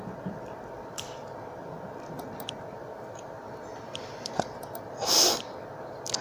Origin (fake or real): real